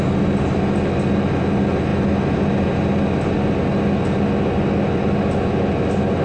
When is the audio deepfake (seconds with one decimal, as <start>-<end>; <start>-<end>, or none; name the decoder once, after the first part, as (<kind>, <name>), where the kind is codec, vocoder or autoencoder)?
none